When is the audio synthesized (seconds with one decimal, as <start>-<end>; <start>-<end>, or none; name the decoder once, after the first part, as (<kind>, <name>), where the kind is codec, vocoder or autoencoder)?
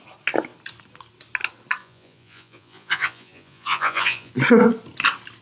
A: 1.8-4.3 (vocoder, Vocos)